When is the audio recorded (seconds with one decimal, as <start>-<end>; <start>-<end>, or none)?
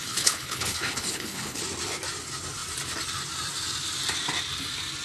1.6-5.0